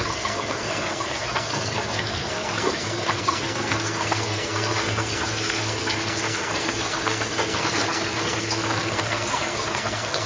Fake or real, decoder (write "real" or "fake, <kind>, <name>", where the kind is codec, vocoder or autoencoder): fake, codec, SNAC